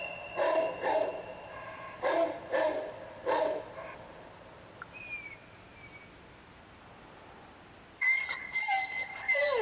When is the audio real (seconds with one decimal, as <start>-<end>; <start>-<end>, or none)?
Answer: 0.0-9.6